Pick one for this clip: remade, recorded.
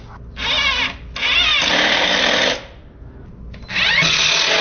recorded